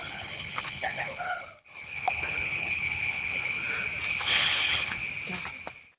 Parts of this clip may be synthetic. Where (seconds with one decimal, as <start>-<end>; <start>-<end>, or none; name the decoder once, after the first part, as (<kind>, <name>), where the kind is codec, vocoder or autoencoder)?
0.0-3.6 (codec, HILCodec); 4.1-5.0